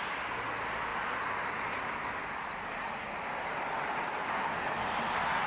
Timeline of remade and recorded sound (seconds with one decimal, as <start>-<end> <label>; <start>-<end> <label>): 0.0-5.5 recorded